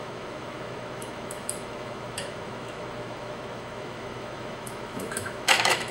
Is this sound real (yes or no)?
no